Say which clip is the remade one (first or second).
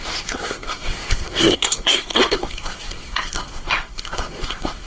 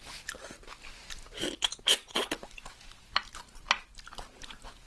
first